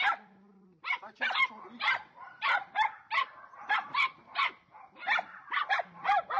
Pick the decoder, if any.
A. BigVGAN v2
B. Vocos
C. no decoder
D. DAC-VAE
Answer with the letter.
A